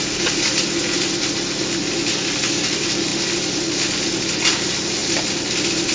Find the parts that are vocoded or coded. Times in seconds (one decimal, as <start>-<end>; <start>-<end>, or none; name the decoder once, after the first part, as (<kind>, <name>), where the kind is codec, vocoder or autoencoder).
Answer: 5.0-5.9 (vocoder, BigVGAN v2)